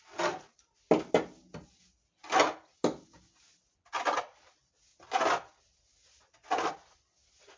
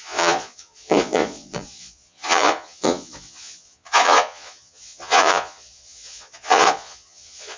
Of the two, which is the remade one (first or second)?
second